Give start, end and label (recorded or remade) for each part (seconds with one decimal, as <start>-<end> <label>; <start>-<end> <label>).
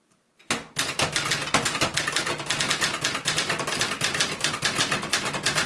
0.0-5.7 recorded